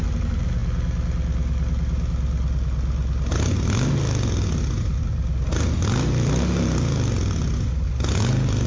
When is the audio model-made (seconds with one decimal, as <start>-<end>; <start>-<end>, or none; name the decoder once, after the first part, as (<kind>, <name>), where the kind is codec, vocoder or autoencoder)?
none